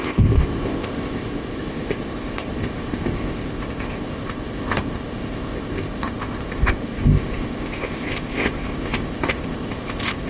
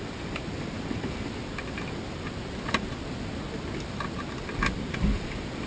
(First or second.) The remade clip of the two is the first